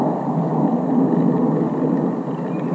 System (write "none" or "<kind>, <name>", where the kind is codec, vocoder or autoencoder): none